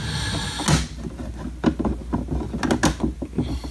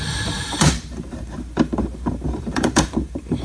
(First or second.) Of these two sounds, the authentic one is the first